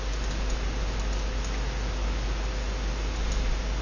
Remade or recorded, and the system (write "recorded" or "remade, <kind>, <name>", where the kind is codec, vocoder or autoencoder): recorded